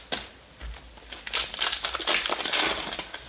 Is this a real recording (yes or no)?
yes